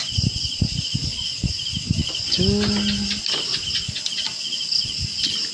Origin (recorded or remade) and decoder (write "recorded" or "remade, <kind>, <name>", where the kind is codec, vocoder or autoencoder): recorded